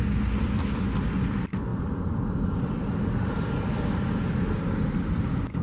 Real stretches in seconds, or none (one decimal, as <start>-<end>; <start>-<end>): 0.0-5.6